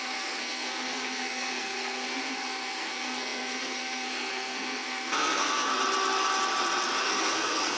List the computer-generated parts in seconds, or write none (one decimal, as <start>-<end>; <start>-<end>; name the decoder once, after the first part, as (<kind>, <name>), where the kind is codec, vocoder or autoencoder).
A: 0.0-5.7 (codec, SNAC); 7.0-7.8